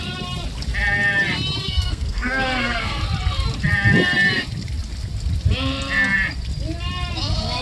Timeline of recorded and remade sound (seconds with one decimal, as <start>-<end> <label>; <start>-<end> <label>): 0.0-1.6 recorded; 1.6-3.0 remade; 3.0-7.6 recorded